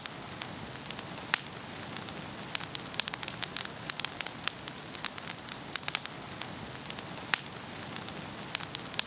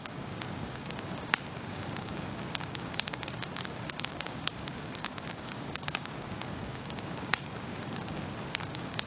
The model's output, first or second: second